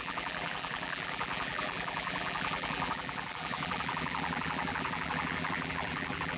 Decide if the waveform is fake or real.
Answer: fake